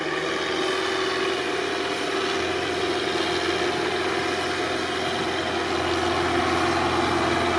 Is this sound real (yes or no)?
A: yes